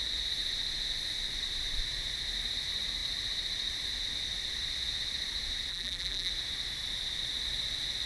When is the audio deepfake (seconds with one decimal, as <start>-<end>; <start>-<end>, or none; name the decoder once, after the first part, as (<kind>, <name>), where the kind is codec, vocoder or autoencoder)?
5.7-6.3 (vocoder, BigVGAN v2)